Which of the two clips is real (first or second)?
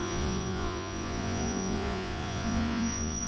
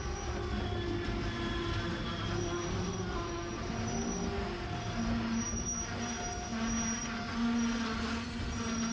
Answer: second